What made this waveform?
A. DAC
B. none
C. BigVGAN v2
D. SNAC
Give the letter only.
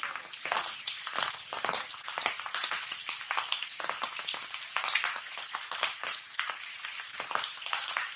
B